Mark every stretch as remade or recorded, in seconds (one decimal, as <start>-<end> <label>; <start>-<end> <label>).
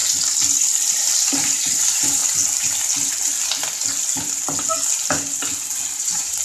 0.0-0.9 recorded; 0.9-2.2 remade; 2.2-6.0 recorded; 6.0-6.4 remade